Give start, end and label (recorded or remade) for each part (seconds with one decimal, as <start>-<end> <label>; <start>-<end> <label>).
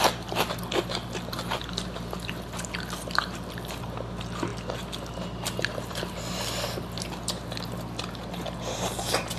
0.0-4.5 remade; 4.5-8.6 recorded; 8.6-9.4 remade